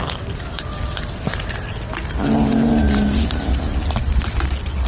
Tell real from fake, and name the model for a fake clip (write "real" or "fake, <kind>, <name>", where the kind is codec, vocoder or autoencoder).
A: real